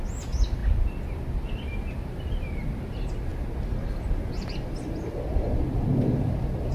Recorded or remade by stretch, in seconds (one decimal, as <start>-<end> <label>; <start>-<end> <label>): 0.0-6.7 recorded

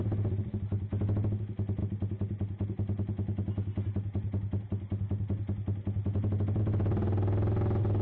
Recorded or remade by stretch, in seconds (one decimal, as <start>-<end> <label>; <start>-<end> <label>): 0.0-8.0 recorded

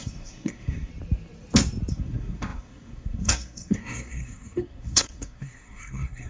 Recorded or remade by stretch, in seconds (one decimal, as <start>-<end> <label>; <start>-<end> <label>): 0.0-0.9 remade; 0.9-1.9 recorded; 1.9-6.3 remade

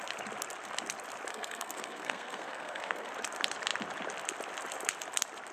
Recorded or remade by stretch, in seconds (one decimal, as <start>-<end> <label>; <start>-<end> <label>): 0.0-1.3 recorded; 1.3-3.1 remade; 3.1-5.5 recorded

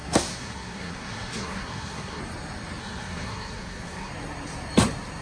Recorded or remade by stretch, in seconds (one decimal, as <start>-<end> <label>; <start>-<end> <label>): 0.0-2.2 remade; 2.2-2.8 recorded; 2.8-4.1 remade; 4.1-5.2 recorded